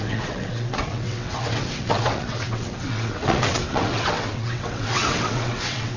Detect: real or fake fake